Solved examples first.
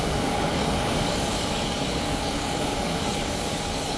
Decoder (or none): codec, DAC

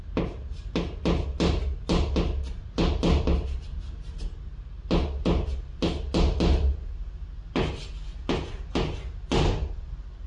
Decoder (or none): none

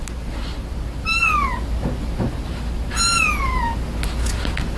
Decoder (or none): none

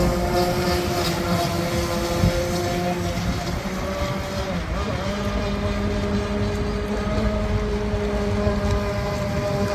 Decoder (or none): none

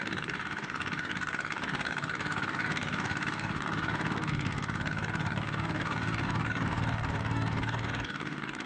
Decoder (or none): codec, DAC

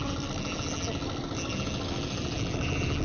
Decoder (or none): none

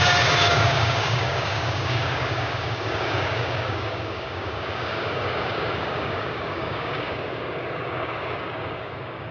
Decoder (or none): codec, DAC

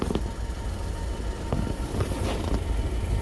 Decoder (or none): none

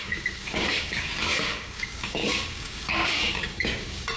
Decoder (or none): codec, DAC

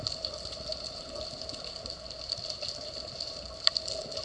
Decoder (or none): none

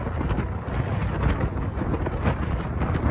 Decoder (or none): none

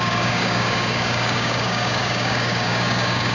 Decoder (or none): codec, DAC